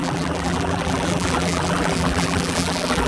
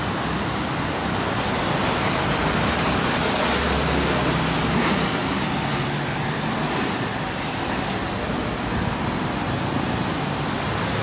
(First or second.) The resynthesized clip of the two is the first